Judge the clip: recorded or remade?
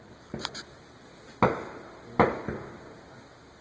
recorded